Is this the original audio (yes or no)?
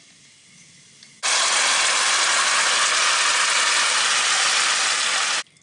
yes